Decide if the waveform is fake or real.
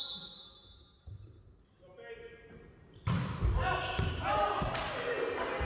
real